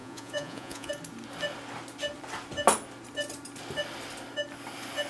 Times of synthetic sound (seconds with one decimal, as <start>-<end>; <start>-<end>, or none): 0.0-0.9